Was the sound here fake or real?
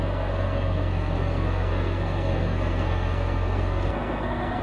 fake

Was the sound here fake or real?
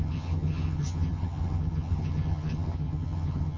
fake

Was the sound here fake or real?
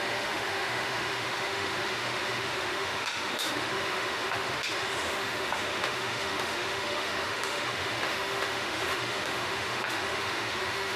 fake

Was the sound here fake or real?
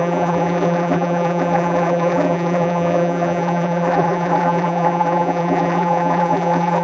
fake